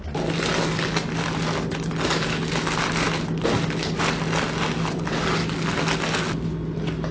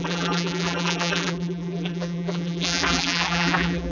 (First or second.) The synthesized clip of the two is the second